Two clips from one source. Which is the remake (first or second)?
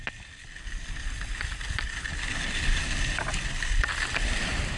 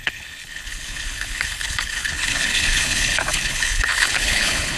second